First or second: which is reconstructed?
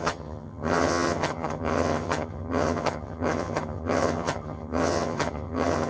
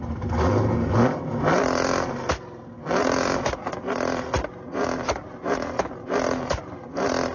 first